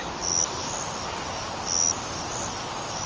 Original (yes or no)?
yes